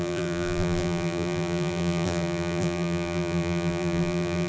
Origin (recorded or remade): remade